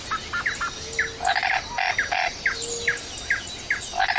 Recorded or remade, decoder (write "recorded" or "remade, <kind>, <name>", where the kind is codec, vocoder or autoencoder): recorded